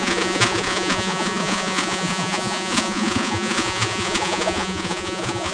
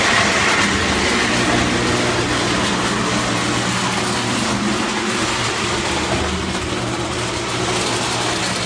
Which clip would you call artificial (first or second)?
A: first